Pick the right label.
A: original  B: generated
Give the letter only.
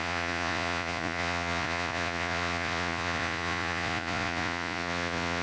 B